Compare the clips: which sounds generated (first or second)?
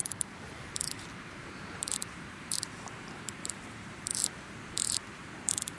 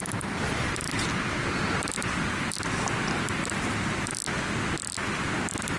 first